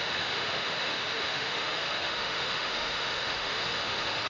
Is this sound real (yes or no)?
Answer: no